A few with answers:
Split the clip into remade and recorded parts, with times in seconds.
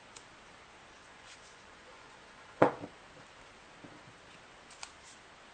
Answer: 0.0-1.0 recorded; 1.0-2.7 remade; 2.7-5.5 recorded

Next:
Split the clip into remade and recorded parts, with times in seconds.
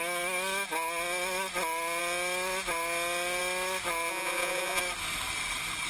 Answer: 0.0-4.1 recorded; 4.1-4.8 remade; 4.8-5.9 recorded